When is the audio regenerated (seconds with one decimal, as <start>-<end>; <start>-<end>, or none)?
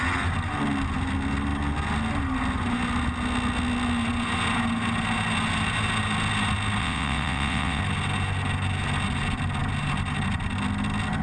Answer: 6.8-7.8